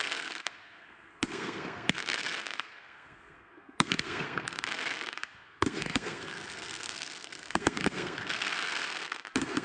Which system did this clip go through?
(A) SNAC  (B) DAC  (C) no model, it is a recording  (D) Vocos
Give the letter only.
A